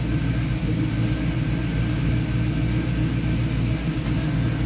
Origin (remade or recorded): recorded